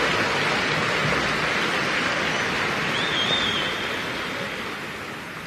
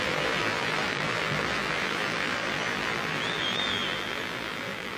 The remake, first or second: second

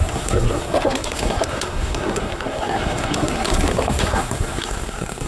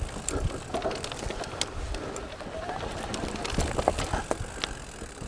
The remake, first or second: first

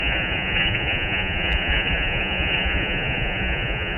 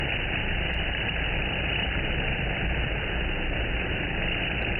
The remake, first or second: first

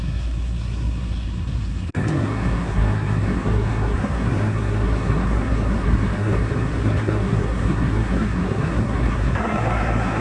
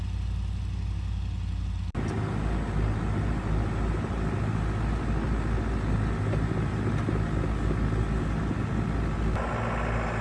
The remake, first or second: first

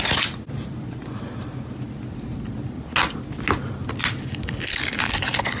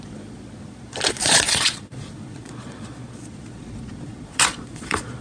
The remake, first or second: second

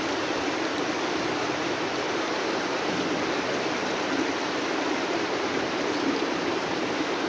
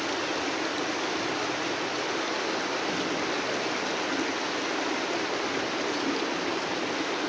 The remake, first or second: first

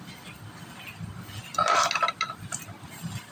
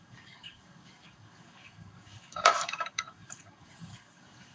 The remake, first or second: second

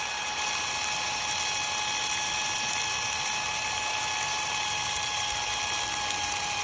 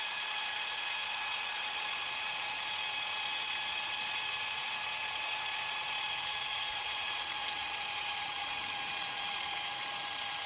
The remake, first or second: second